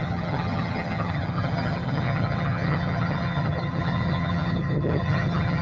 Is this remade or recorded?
remade